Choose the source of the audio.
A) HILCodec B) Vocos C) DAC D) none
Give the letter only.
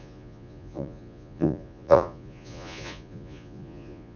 B